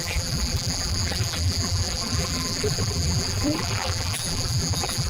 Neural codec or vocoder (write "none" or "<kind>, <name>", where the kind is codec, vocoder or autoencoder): vocoder, BigVGAN v2